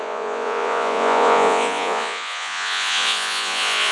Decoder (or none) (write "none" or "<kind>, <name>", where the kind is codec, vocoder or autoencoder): vocoder, Vocos